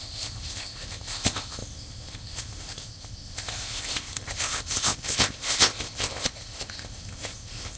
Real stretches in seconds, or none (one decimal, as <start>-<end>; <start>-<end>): none